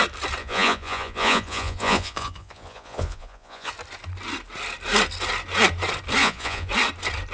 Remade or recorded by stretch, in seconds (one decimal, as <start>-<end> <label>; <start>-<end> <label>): 0.0-0.4 recorded; 0.4-3.7 remade; 3.7-6.2 recorded; 6.2-6.7 remade; 6.7-7.3 recorded